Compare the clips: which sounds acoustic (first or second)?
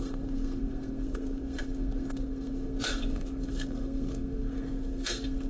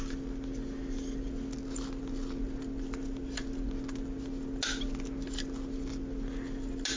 second